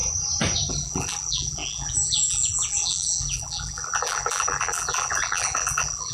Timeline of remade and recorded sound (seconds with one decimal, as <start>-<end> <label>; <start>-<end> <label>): 0.0-0.7 recorded; 0.7-6.1 remade